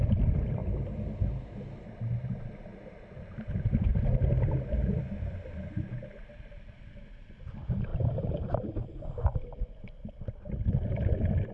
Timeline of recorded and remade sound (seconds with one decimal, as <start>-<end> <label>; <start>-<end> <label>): 0.0-11.5 recorded